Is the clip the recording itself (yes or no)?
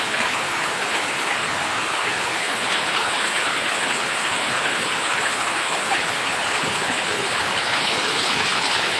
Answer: no